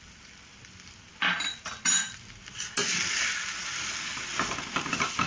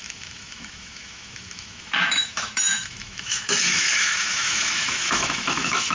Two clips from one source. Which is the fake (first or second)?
second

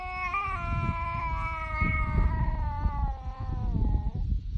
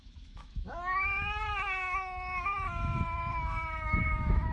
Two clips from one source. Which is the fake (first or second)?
second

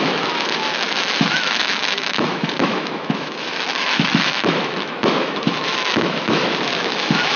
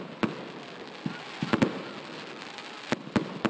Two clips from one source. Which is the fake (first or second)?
first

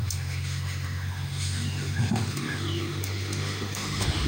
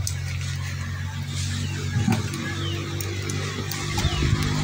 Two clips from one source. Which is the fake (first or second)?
first